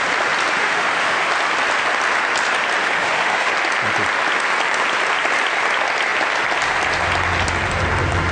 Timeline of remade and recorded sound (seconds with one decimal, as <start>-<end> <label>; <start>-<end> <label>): 0.0-0.6 recorded; 0.6-1.2 remade; 1.2-2.8 recorded; 2.8-3.5 remade; 3.5-8.3 recorded